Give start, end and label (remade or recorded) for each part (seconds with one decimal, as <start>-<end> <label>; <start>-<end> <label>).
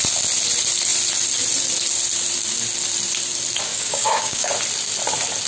0.0-3.7 recorded; 3.7-4.5 remade; 4.5-5.5 recorded